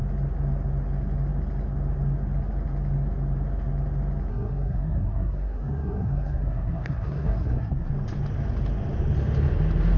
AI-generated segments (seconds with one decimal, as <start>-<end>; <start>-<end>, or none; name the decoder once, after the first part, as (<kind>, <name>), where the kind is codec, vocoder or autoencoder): 4.3-7.9 (codec, SNAC)